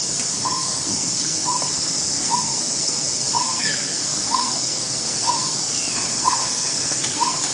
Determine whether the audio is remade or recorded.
remade